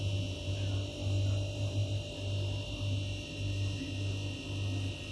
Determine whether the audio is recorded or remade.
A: recorded